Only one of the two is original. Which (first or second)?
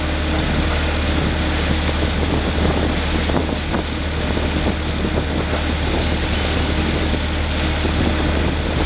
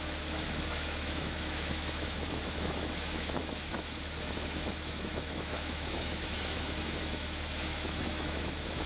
first